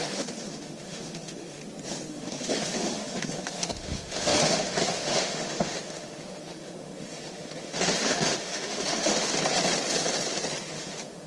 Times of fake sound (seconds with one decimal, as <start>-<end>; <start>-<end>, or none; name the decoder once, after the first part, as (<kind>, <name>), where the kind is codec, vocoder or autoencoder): 0.0-1.6 (autoencoder, DAC-VAE); 2.1-9.3; 10.6-11.3